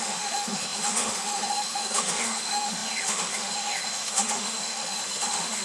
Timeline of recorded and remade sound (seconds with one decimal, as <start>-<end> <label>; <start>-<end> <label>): 0.0-5.6 remade